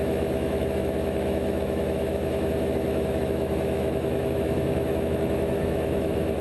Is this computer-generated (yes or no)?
yes